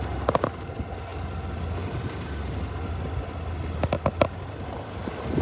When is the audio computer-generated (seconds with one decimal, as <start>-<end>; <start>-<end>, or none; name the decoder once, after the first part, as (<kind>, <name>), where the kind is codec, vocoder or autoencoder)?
none